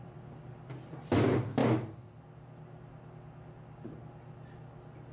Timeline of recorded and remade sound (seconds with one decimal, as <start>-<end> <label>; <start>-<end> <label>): 0.0-1.6 remade; 1.6-5.1 recorded